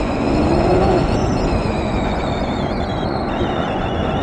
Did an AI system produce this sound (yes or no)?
yes